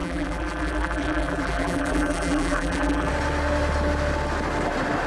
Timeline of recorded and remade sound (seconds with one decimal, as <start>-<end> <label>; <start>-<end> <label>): 0.0-3.1 remade; 3.1-5.1 recorded